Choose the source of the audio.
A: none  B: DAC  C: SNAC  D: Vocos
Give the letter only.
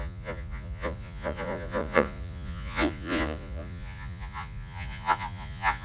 D